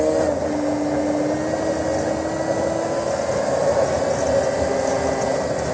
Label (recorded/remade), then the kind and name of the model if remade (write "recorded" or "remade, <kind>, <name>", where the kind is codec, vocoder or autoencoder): recorded